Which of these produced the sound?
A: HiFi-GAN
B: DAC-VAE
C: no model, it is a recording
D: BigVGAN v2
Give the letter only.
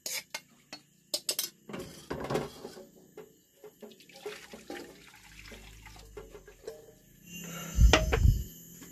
C